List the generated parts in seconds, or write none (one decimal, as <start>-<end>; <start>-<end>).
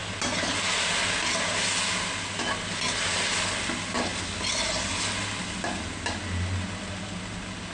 none